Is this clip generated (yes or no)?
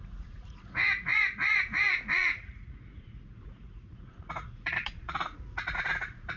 yes